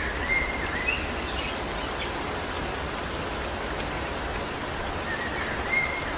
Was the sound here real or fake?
real